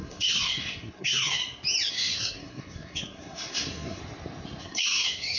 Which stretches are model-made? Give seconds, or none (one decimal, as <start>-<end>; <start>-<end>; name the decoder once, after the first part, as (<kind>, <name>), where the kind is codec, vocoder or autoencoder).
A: 0.0-1.4 (codec, SNAC); 1.9-4.0; 4.6-5.4